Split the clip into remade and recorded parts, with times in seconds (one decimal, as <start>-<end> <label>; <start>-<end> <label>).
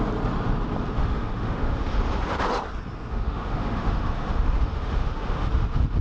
0.0-1.0 recorded; 1.0-2.0 remade; 2.0-3.1 recorded; 3.1-5.5 remade; 5.5-6.0 recorded